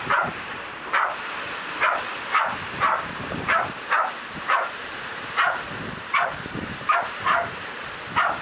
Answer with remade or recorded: remade